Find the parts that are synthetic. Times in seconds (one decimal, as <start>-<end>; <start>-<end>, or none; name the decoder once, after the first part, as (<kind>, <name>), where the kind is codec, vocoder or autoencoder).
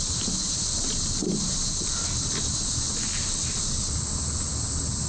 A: none